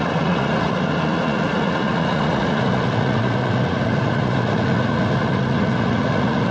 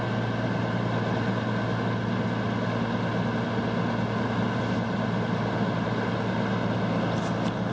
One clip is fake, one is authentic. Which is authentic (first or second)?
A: second